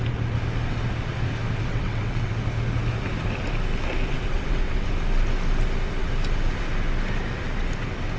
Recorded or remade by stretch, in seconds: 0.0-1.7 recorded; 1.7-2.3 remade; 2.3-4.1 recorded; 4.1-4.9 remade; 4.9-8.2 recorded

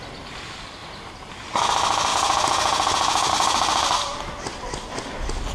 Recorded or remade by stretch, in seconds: 0.0-2.1 recorded; 2.1-3.3 remade; 3.3-5.5 recorded